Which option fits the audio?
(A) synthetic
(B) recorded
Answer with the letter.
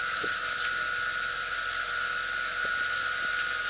B